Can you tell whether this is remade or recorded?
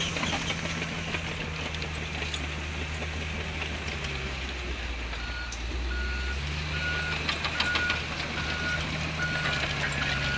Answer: recorded